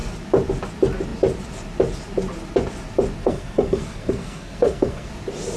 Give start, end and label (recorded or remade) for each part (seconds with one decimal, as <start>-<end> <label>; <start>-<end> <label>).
0.0-3.2 recorded; 3.2-5.1 remade; 5.1-5.6 recorded